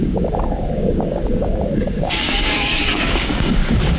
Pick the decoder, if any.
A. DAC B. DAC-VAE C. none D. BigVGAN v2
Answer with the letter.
A